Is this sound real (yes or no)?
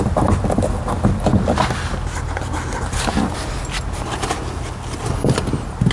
yes